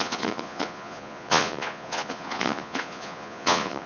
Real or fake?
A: fake